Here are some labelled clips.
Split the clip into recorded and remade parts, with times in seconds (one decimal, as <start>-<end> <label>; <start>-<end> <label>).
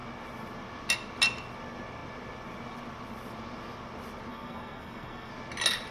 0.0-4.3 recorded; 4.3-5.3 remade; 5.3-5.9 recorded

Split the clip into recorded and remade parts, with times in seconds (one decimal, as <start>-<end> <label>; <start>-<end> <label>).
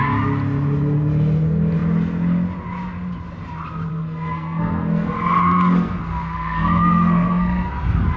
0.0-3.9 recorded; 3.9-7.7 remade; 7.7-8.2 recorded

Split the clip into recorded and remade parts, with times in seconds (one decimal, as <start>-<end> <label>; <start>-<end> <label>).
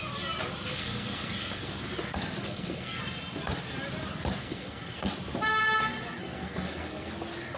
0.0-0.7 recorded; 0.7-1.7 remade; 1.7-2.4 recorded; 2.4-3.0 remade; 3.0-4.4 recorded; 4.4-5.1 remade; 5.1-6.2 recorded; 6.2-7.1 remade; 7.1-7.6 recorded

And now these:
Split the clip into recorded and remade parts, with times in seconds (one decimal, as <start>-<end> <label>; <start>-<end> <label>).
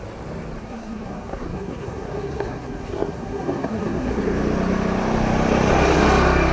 0.0-0.6 recorded; 0.6-4.2 remade; 4.2-6.5 recorded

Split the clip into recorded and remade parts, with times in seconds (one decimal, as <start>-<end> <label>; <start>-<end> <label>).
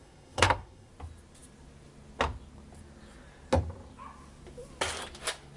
0.0-0.9 remade; 0.9-5.6 recorded